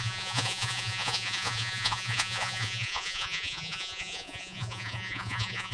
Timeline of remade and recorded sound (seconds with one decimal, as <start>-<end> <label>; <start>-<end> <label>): 0.0-5.7 remade